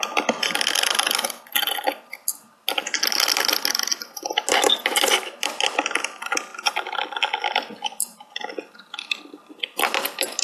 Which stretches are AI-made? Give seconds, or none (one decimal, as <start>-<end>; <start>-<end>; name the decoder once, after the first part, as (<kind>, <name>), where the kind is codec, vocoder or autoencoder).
none